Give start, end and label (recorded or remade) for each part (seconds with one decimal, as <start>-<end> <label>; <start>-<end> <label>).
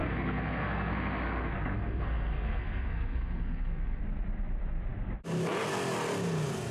0.0-4.0 remade; 4.0-6.7 recorded